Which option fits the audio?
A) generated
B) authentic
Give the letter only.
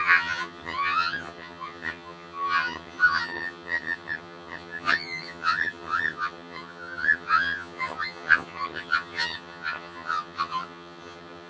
A